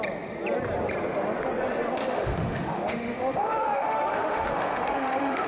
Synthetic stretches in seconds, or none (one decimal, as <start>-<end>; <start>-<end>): 2.0-5.5